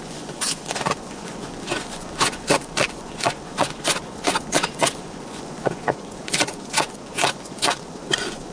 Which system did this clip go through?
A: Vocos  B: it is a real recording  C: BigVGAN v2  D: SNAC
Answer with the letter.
A